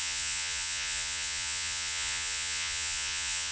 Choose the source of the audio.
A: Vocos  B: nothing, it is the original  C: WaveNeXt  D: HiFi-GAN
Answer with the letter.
A